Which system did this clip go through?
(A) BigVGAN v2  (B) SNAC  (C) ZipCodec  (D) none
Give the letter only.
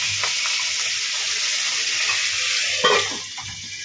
D